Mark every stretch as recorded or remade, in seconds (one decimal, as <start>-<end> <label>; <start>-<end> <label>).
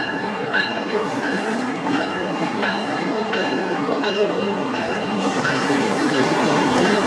0.0-7.1 remade